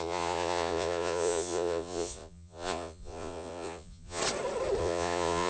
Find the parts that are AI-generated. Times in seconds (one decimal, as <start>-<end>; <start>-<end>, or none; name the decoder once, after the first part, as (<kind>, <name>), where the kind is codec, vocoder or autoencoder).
0.0-4.2 (vocoder, Vocos); 4.8-5.5